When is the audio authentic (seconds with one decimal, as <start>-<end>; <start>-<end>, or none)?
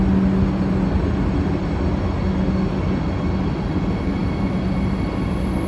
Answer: 0.0-5.7